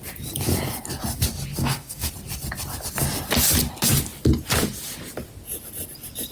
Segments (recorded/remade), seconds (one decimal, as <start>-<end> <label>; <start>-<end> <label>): 0.0-1.6 recorded; 1.6-2.1 remade; 2.1-6.3 recorded